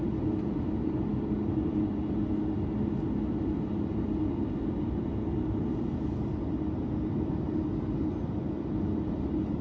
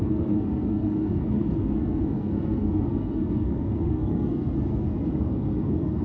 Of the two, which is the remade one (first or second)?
second